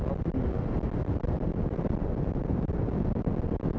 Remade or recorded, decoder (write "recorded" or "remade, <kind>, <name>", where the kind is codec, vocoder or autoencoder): recorded